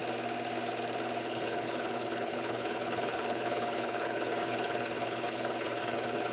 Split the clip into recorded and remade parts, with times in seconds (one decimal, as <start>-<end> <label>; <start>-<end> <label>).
0.0-1.2 recorded; 1.2-6.3 remade